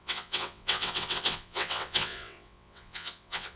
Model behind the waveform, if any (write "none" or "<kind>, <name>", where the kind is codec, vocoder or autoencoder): vocoder, WaveNeXt